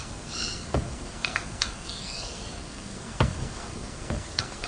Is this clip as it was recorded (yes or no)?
no